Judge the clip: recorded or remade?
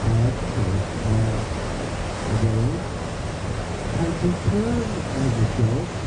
recorded